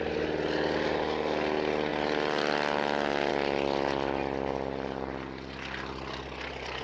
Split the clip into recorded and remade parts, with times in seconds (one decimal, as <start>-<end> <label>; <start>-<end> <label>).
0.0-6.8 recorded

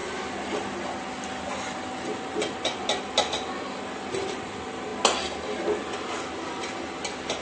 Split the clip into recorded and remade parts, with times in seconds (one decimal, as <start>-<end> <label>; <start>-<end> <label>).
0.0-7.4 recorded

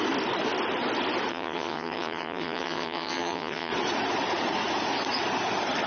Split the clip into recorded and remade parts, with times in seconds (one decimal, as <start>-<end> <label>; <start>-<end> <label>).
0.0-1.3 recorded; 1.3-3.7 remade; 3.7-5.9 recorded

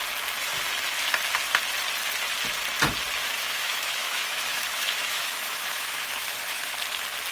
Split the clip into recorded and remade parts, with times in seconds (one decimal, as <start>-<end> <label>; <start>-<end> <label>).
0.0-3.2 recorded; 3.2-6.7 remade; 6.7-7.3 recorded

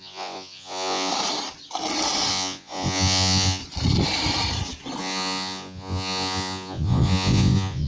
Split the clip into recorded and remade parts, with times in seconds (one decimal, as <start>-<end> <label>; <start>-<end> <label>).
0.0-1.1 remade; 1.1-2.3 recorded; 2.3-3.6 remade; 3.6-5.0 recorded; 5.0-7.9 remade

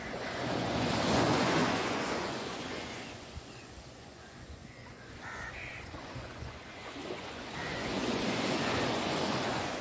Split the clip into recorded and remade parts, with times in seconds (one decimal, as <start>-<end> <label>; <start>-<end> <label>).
0.0-9.8 remade